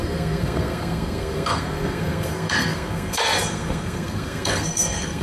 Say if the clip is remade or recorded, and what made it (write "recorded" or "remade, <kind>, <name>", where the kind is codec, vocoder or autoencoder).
remade, codec, SNAC